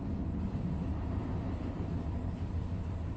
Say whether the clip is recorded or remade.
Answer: recorded